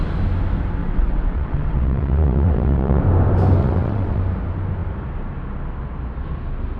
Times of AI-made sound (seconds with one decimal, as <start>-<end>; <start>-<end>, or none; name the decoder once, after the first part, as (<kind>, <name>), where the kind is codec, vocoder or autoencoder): 0.8-3.0 (vocoder, WaveNeXt); 3.6-4.2